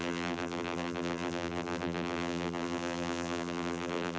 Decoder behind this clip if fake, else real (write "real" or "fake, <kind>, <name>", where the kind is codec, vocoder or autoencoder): fake, vocoder, BigVGAN v2